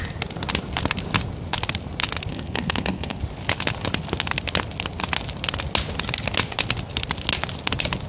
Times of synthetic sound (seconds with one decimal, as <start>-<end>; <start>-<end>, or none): 2.3-3.2